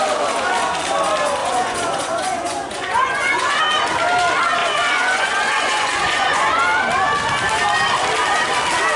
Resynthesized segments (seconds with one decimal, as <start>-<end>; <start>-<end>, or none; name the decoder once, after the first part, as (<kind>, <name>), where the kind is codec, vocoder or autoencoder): 1.4-3.6 (vocoder, Vocos); 4.6-6.6